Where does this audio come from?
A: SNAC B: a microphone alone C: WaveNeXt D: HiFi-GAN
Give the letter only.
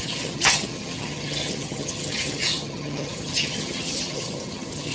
D